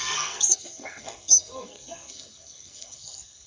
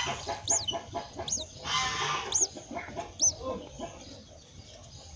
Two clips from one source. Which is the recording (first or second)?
second